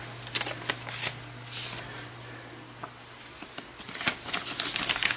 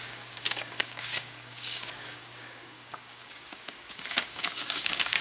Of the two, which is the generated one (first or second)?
second